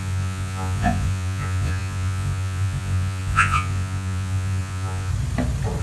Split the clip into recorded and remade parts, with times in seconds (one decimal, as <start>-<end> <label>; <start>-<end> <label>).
0.0-5.1 remade; 5.1-5.8 recorded